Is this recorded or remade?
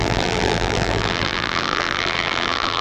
remade